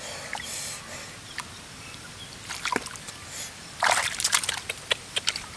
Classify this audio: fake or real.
real